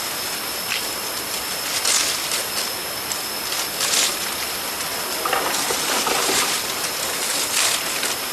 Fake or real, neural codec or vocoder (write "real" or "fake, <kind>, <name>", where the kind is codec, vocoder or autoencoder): real